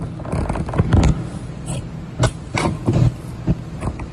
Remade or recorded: recorded